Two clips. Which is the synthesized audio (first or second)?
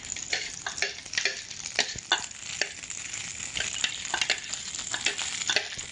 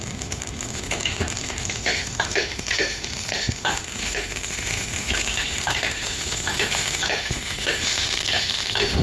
second